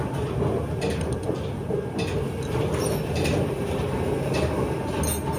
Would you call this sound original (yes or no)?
yes